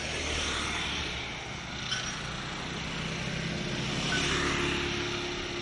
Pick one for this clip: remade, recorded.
recorded